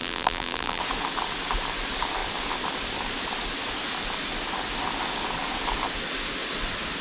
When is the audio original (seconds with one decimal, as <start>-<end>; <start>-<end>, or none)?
0.8-7.0

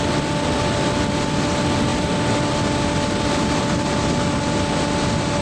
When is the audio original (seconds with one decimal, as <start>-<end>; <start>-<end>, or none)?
0.0-5.4

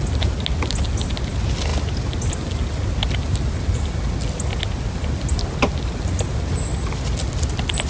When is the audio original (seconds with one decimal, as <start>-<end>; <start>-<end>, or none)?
0.0-7.9

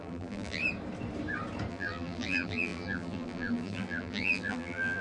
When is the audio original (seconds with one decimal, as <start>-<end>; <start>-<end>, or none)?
0.6-1.7